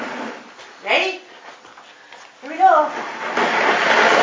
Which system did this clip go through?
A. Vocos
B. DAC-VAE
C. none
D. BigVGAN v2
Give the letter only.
C